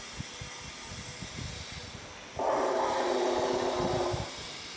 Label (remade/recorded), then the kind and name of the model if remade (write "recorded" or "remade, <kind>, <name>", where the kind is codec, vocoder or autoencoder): recorded